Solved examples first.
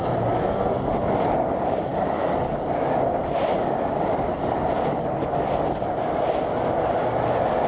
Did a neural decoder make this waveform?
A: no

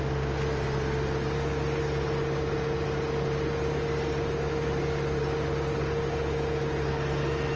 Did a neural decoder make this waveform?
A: no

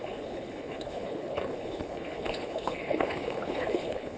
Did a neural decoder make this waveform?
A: yes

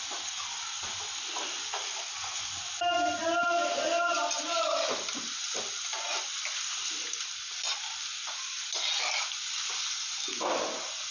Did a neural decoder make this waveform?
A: no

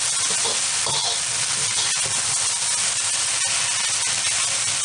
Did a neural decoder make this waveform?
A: no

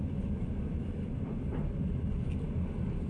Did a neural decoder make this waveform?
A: no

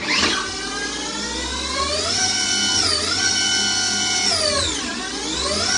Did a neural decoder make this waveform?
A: no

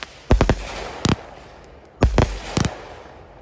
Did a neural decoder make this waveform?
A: no